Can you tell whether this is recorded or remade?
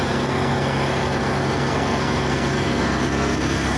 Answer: remade